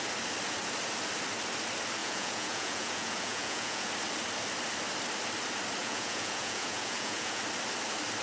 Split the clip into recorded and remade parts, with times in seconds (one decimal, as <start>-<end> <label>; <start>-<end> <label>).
0.0-2.0 recorded; 2.0-3.9 remade; 3.9-5.8 recorded; 5.8-7.4 remade; 7.4-8.2 recorded